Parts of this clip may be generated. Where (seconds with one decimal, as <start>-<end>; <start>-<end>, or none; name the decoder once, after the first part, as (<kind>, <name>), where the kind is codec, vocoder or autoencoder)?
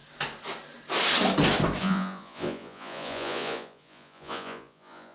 1.8-5.1 (vocoder, Vocos)